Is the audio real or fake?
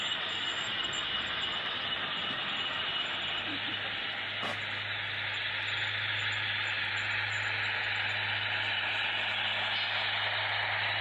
real